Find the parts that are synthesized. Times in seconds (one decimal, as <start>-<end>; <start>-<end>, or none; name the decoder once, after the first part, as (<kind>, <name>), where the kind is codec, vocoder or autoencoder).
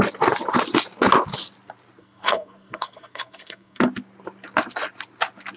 2.0-3.8 (codec, SNAC)